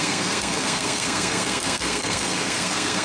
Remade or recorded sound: remade